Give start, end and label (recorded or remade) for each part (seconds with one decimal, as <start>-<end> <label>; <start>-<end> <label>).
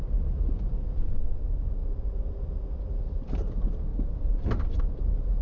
0.0-3.9 recorded; 3.9-4.8 remade; 4.8-5.4 recorded